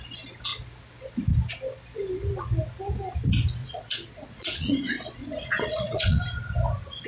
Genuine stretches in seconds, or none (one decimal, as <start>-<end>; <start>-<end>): 0.0-3.6; 6.2-7.1